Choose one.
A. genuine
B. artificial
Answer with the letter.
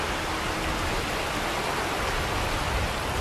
A